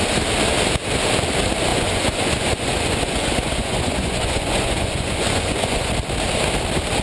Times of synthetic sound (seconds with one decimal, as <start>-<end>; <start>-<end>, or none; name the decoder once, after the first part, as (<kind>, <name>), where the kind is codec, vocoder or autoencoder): 1.7-5.9 (vocoder, Vocos)